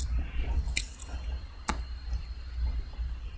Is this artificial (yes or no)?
no